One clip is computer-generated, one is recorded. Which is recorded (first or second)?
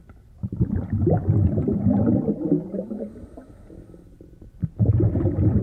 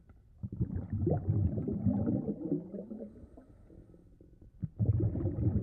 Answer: first